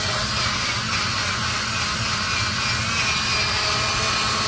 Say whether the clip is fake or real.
real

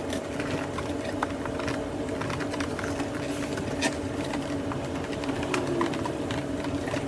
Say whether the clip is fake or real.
real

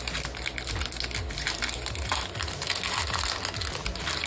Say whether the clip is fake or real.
real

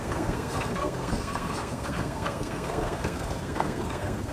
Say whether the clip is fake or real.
fake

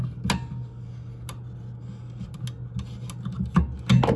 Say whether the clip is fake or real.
real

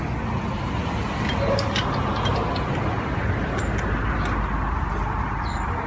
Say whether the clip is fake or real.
real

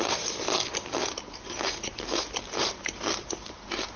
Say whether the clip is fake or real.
fake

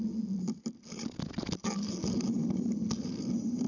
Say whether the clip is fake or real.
real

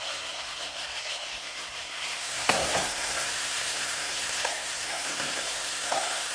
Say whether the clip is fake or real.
fake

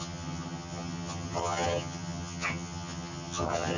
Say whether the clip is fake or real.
fake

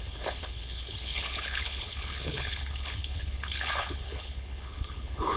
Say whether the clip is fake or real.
fake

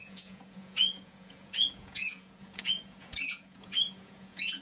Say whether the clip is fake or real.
fake